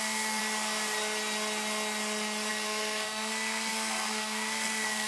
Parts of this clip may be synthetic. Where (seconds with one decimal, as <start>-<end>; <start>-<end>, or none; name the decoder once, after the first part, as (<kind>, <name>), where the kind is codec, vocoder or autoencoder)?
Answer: 0.0-0.4 (codec, SNAC); 2.5-5.1